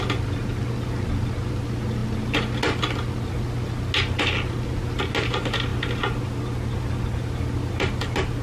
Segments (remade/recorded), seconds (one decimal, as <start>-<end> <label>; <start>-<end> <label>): 0.0-2.0 recorded; 2.0-2.6 remade; 2.6-8.4 recorded